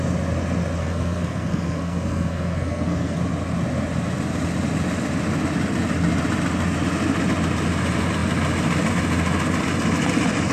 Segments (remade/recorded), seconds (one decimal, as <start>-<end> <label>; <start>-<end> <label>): 0.0-0.8 recorded; 0.8-3.2 remade; 3.2-10.5 recorded